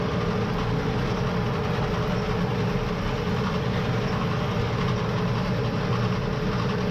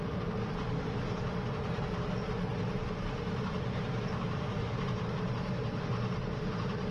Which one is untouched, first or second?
first